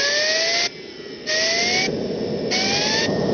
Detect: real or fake real